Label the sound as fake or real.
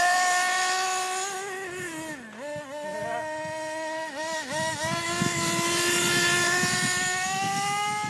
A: real